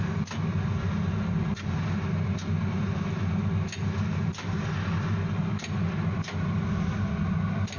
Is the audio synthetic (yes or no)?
no